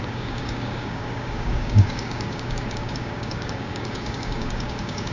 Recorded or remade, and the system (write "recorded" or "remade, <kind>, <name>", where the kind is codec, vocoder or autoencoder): remade, codec, DAC